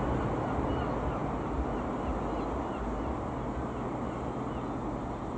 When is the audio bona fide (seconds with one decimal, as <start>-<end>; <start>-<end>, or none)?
0.0-5.4